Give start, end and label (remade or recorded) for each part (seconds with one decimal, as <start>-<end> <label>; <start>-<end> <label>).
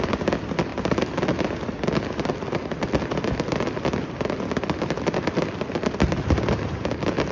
0.0-7.3 recorded